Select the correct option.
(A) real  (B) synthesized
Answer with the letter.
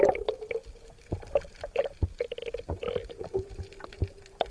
B